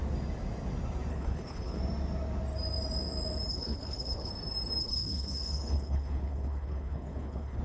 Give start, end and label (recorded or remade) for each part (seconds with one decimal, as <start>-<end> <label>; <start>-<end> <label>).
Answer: 0.0-1.1 recorded; 1.1-1.8 remade; 1.8-3.5 recorded; 3.5-4.3 remade; 4.3-4.8 recorded; 4.8-7.6 remade